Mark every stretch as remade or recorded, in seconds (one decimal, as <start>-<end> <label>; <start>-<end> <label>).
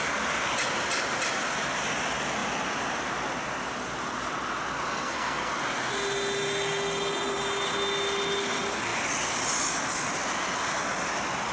0.0-4.9 recorded; 4.9-5.5 remade; 5.5-11.5 recorded